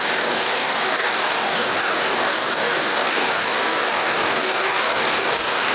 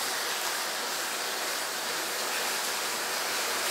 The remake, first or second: first